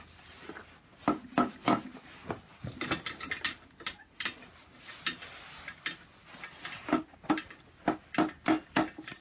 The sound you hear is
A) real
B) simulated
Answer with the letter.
A